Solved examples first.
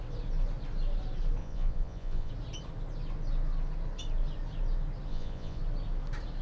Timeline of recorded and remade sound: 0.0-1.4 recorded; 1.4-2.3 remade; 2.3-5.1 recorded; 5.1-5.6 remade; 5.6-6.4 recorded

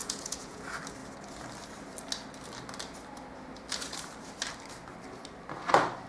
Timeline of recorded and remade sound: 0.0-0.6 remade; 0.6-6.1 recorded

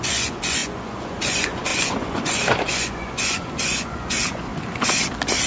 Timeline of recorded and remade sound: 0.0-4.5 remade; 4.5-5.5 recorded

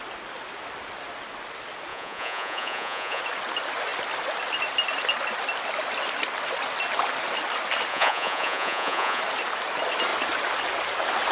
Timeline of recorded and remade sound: 0.0-1.9 recorded; 1.9-3.2 remade; 3.2-7.9 recorded; 7.9-9.2 remade; 9.2-11.3 recorded